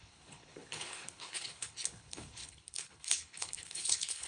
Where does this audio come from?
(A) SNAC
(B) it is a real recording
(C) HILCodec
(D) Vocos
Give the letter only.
C